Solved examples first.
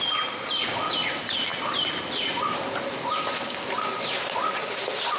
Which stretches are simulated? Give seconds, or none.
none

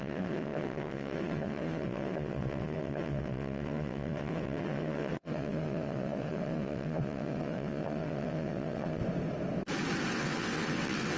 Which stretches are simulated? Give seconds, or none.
0.0-9.0 (vocoder, WaveNeXt); 10.1-11.2

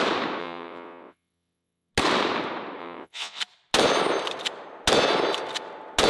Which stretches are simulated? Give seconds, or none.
0.4-1.9 (vocoder, WaveNeXt); 2.8-3.4

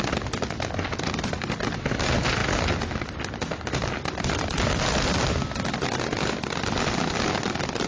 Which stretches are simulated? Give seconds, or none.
none

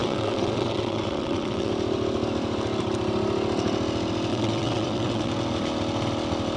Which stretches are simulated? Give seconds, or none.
0.0-1.7 (vocoder, WaveNeXt); 4.3-5.3